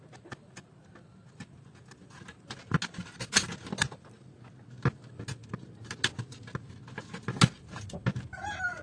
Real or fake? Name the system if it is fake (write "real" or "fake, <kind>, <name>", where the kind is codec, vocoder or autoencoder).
real